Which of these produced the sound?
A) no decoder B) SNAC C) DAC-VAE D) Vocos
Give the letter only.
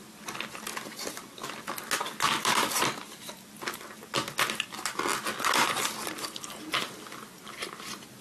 A